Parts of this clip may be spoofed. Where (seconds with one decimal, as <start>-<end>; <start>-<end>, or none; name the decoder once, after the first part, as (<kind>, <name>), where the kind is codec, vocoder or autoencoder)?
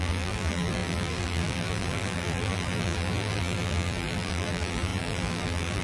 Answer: 0.0-5.8 (vocoder, BigVGAN v2)